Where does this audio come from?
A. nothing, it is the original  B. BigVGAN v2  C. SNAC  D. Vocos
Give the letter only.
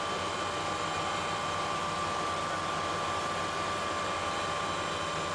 A